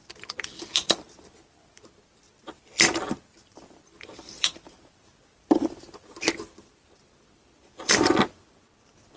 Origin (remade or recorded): remade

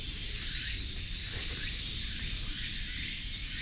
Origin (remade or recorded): remade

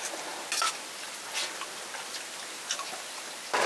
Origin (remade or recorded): recorded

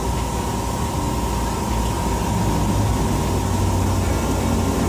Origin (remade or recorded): recorded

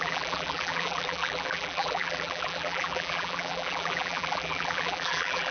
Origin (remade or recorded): remade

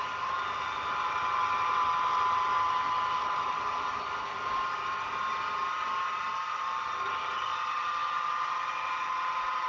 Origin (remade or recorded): recorded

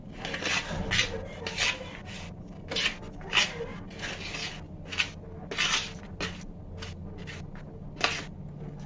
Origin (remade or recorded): recorded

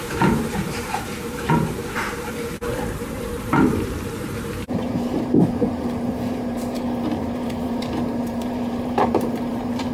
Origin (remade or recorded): remade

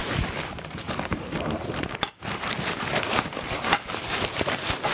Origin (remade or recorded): remade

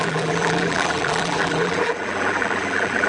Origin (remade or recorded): remade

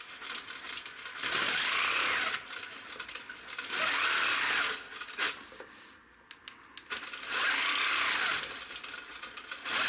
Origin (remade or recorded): recorded